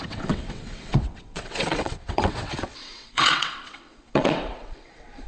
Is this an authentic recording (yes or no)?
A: no